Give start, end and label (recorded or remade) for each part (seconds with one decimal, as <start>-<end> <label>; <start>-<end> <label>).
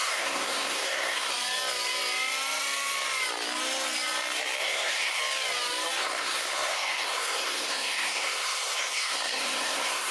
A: 0.0-1.3 remade; 1.3-4.6 recorded; 4.6-5.2 remade; 5.2-6.0 recorded; 6.0-10.1 remade